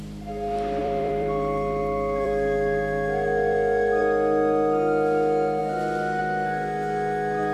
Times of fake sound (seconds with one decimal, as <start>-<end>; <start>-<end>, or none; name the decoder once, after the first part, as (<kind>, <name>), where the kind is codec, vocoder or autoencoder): 0.8-4.0 (vocoder, BigVGAN v2)